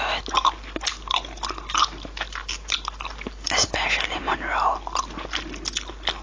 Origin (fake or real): real